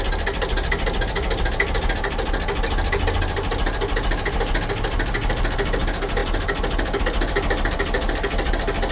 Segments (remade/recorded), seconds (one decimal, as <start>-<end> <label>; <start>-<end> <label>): 0.0-8.9 recorded